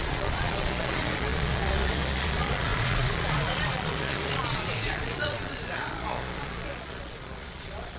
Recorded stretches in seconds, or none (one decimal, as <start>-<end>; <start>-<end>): none